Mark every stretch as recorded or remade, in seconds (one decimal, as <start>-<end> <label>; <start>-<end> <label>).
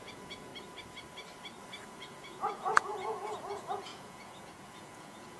0.0-0.5 remade; 0.5-1.8 recorded; 1.8-5.4 remade